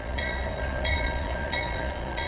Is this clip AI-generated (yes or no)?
yes